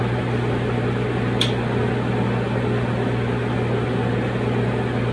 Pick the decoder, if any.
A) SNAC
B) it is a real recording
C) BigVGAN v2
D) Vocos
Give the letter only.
B